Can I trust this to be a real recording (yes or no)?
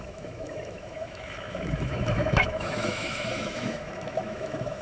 no